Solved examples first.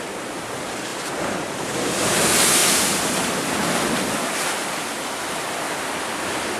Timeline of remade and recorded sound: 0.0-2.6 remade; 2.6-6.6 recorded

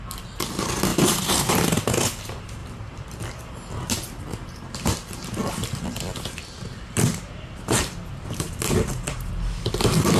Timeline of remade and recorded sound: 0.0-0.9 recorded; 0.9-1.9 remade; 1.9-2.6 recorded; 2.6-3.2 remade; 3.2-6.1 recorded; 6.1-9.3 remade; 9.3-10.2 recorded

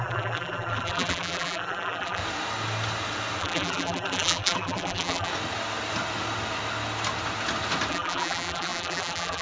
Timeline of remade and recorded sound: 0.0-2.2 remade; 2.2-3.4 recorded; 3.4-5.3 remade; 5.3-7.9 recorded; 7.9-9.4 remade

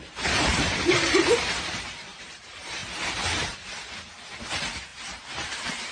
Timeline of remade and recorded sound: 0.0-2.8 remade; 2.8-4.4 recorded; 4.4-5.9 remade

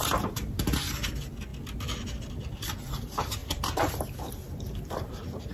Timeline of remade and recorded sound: 0.0-3.4 recorded; 3.4-4.3 remade; 4.3-5.5 recorded

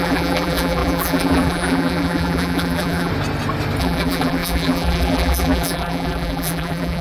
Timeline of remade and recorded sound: 0.0-3.1 remade; 3.1-3.8 recorded; 3.8-7.0 remade

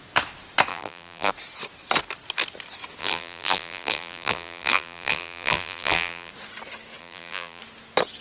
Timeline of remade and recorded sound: 0.0-0.7 recorded; 0.7-1.3 remade; 1.3-3.0 recorded; 3.0-6.3 remade; 6.3-7.0 recorded; 7.0-7.6 remade; 7.6-8.2 recorded